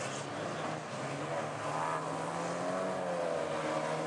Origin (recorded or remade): recorded